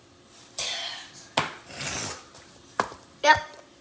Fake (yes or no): no